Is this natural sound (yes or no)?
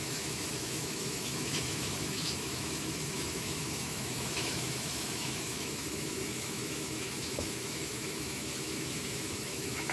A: no